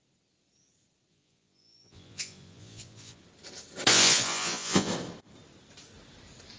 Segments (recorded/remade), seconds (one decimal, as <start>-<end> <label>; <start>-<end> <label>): 0.0-1.1 recorded; 1.1-3.2 remade; 3.2-3.9 recorded; 3.9-4.9 remade; 4.9-6.6 recorded